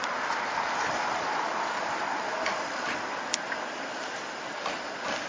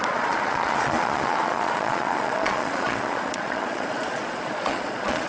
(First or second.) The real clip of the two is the first